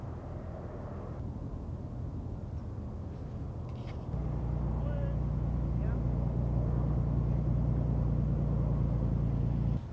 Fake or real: real